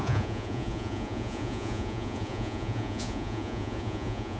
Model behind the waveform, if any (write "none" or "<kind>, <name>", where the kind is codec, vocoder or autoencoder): vocoder, Vocos